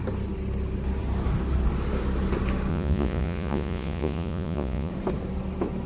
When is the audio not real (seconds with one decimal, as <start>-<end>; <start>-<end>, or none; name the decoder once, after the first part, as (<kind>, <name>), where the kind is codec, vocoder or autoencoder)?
2.7-4.9 (vocoder, Vocos)